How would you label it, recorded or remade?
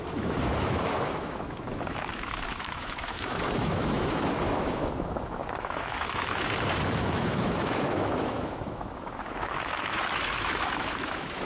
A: remade